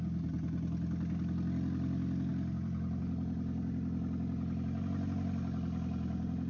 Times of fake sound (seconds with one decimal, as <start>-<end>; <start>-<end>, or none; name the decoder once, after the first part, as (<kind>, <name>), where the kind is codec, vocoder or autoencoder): 2.3-3.0 (vocoder, BigVGAN v2)